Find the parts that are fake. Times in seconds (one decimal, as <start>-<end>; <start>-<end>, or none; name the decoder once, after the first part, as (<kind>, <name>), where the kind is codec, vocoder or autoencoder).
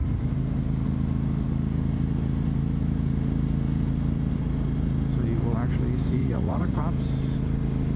6.2-6.8 (vocoder, Vocos)